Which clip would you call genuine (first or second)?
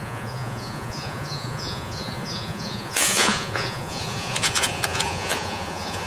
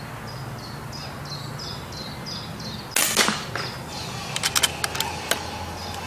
second